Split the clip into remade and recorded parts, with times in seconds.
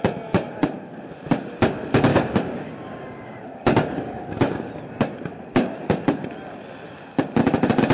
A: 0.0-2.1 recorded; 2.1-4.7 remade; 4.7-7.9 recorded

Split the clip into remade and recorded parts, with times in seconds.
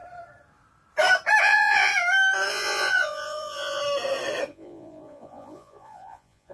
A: 0.0-1.4 recorded; 1.4-1.9 remade; 1.9-2.5 recorded; 2.5-3.8 remade; 3.8-4.5 recorded; 4.5-6.5 remade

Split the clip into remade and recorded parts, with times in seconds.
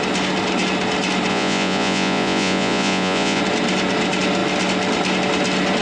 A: 0.0-1.3 recorded; 1.3-3.4 remade; 3.4-5.8 recorded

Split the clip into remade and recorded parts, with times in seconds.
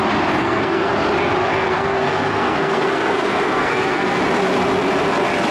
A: 0.0-0.4 recorded; 0.4-0.9 remade; 0.9-1.4 recorded; 1.4-4.2 remade; 4.2-5.5 recorded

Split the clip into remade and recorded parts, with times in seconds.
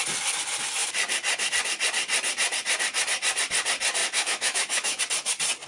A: 0.0-4.0 recorded; 4.0-5.0 remade; 5.0-5.7 recorded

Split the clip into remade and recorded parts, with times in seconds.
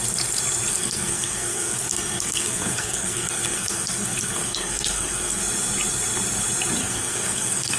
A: 0.0-0.7 recorded; 0.7-5.4 remade; 5.4-6.8 recorded; 6.8-7.8 remade